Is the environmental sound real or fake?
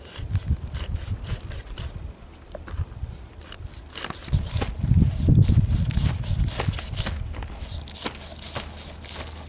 real